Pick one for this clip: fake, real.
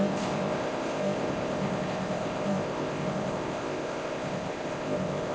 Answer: fake